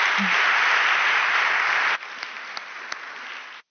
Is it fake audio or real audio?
real